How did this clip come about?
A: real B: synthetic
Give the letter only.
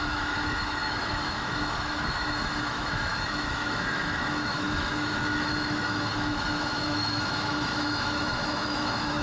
B